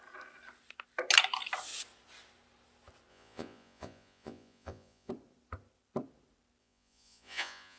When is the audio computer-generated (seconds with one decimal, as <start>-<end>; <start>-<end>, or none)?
3.1-5.1; 6.6-7.8